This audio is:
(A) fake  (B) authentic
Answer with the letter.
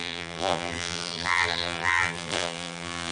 A